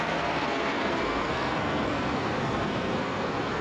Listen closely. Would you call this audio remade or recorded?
remade